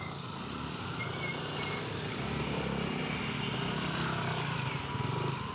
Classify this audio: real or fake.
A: real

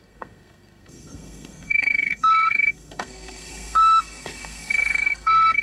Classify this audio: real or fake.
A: fake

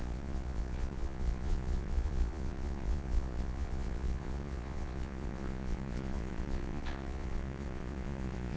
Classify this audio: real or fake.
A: fake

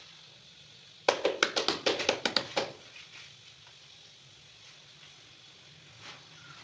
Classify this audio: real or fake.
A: real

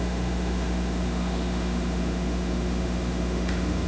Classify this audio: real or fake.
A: fake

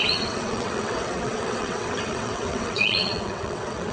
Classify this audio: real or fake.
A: fake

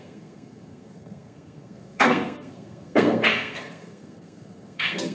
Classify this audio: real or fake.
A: fake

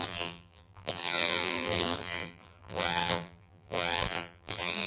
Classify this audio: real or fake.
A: fake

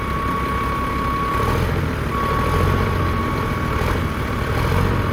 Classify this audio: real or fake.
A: real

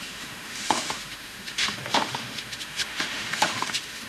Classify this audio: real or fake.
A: fake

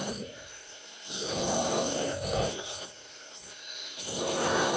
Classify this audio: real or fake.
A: fake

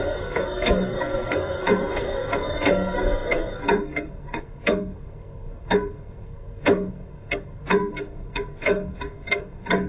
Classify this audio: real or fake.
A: fake